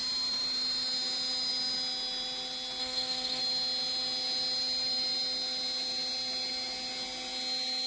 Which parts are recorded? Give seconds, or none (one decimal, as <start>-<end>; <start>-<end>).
0.0-2.8; 3.4-7.9